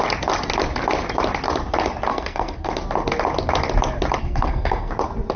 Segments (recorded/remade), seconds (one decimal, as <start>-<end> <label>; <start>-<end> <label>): 0.0-2.1 recorded; 2.1-2.7 remade; 2.7-4.2 recorded; 4.2-4.9 remade; 4.9-5.4 recorded